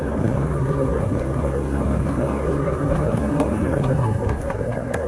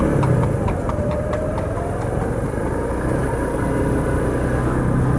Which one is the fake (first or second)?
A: first